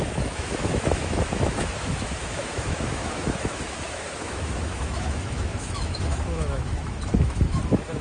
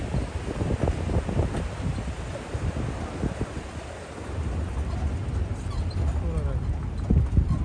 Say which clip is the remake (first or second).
first